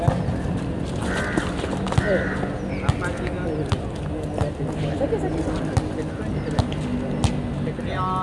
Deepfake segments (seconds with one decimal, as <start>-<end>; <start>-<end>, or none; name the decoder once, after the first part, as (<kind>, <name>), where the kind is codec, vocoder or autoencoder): none